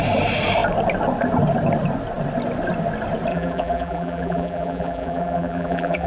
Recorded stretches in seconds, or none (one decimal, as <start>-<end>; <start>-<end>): 0.0-3.3

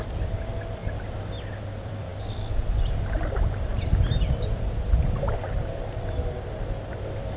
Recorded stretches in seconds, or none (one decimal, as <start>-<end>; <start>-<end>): 0.8-1.6